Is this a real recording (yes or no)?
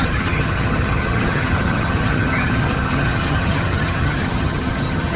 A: no